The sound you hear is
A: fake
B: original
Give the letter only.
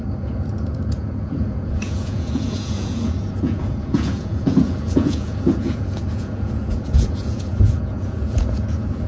A